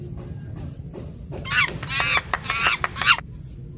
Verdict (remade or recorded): recorded